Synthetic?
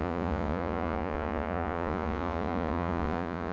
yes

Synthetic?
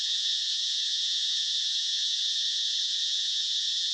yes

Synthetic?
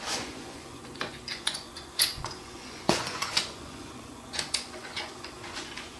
yes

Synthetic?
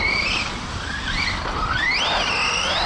no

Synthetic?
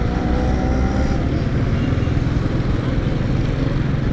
no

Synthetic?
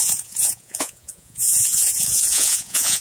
yes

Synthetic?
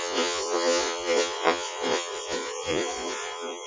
yes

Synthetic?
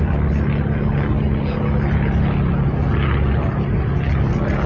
no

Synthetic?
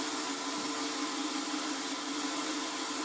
no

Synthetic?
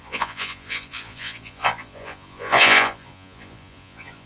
yes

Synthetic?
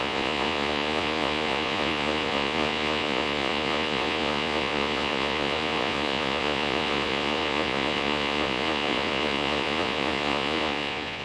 yes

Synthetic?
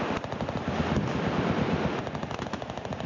no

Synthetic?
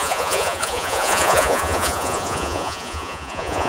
yes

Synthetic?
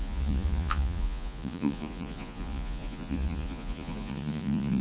yes